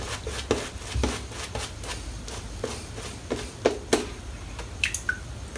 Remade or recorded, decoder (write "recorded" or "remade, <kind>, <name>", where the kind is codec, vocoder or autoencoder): recorded